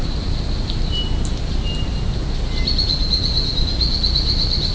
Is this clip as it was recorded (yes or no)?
yes